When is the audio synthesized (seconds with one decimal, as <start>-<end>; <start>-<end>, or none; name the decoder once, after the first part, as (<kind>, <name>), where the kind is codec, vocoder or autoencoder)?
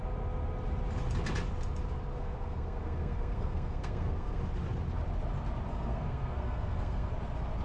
2.1-4.4 (codec, SNAC); 5.7-7.1